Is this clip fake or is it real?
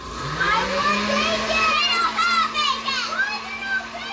real